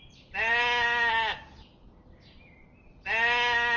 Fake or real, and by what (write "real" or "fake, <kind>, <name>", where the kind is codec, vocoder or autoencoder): real